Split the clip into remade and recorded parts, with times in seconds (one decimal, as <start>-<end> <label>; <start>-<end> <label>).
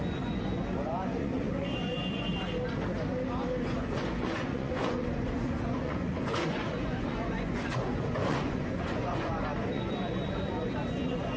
0.0-2.3 remade; 2.3-3.7 recorded; 3.7-11.4 remade